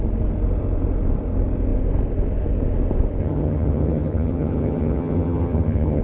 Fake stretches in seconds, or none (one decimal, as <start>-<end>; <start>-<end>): 3.2-6.0